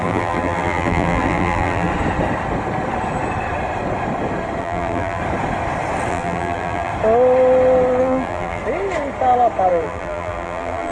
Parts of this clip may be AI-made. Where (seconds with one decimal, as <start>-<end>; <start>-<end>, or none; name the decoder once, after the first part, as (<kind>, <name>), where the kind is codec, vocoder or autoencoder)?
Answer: 0.0-1.9 (vocoder, BigVGAN v2); 4.6-5.2; 6.1-6.9; 8.0-8.6; 9.7-10.9